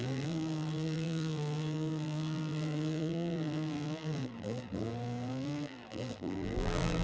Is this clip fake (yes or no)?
yes